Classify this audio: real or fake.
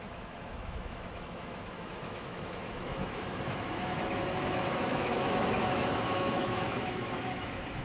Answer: fake